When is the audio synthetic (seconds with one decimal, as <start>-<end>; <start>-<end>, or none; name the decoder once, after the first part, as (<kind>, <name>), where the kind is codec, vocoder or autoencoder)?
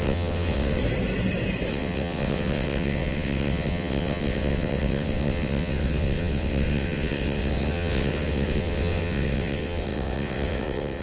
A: 0.0-0.8 (vocoder, WaveNeXt); 1.7-11.0